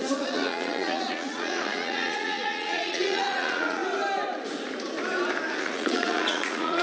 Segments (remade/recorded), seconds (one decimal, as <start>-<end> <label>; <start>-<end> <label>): 0.0-3.8 remade; 3.8-5.6 recorded; 5.6-6.8 remade